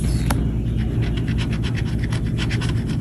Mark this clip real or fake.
real